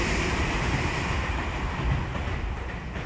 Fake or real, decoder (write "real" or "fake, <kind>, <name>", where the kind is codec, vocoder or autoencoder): real